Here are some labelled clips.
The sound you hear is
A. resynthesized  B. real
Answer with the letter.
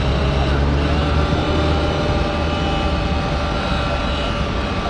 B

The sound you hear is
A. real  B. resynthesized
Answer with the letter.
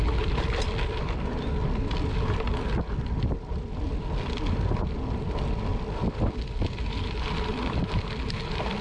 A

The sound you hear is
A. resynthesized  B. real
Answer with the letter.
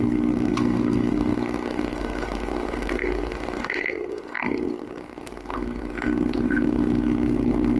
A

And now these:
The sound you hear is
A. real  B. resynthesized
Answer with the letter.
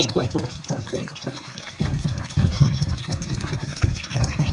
B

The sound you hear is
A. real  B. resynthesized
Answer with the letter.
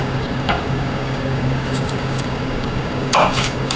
B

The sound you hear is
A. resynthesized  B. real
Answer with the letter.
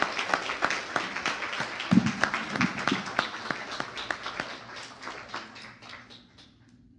B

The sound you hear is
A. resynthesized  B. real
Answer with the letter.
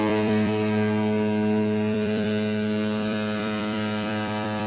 A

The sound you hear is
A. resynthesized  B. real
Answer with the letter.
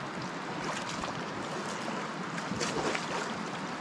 B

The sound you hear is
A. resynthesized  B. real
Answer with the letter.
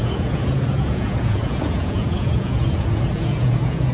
A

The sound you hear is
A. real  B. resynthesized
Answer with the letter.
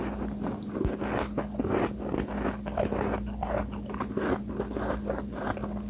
A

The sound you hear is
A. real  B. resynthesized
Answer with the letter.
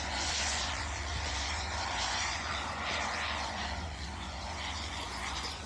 B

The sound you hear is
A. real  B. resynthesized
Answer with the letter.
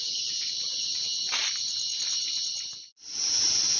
A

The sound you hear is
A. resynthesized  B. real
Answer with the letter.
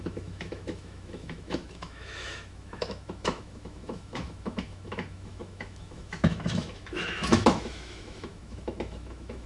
A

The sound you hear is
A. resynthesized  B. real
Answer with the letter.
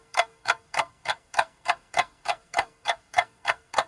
A